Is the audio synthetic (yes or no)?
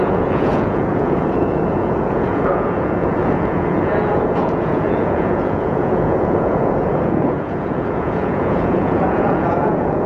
yes